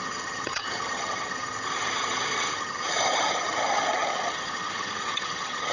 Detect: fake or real fake